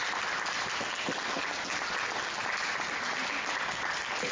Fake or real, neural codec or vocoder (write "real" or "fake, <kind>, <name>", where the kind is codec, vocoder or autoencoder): real